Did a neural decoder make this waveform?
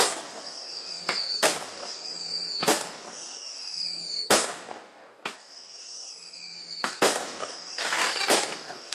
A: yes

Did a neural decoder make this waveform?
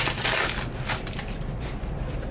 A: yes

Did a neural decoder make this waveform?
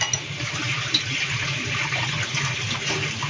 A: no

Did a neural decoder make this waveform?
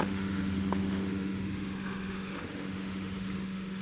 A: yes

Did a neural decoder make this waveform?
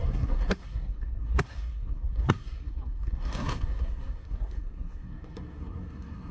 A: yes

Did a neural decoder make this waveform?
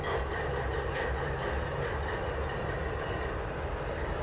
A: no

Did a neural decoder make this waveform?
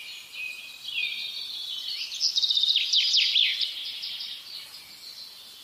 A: no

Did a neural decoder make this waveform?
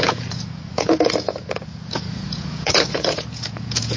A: yes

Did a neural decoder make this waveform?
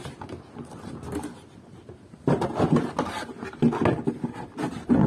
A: no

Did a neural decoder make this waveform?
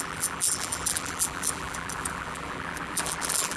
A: yes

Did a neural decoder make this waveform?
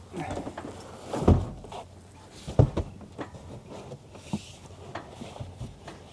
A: no